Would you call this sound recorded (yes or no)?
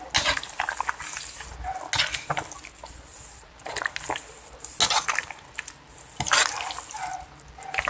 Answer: yes